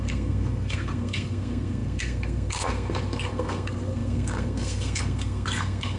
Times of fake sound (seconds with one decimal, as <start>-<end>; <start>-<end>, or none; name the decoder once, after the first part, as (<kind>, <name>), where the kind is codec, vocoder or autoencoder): 0.0-6.0 (codec, SNAC)